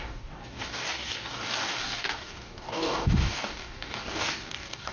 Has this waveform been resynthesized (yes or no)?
yes